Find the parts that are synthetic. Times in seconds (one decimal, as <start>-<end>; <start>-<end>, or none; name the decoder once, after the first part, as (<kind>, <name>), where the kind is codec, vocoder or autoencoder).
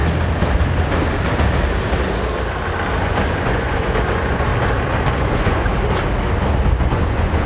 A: 3.0-4.5 (vocoder, Vocos); 5.1-5.7; 6.8-7.5